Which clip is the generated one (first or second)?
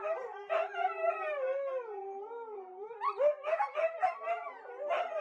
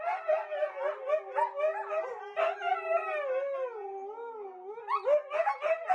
first